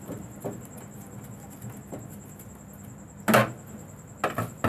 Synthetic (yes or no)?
no